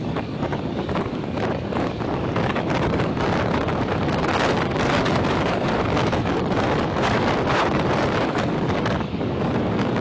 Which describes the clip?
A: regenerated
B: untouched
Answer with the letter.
A